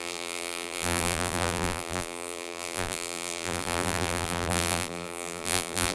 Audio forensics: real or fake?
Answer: fake